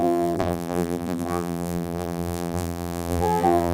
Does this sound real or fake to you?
fake